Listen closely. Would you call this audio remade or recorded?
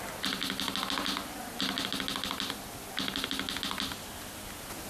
recorded